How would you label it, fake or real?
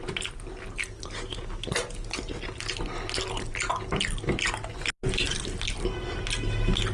real